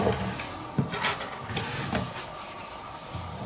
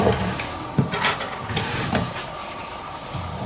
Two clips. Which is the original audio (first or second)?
first